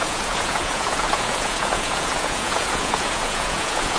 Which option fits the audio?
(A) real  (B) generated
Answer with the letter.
B